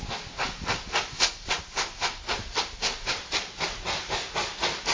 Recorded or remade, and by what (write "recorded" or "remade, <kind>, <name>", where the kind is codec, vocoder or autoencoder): recorded